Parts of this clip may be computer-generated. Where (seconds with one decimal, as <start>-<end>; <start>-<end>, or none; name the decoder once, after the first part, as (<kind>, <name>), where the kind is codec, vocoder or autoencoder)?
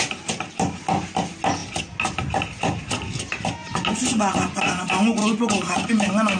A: 3.6-4.6 (vocoder, Vocos); 5.2-5.9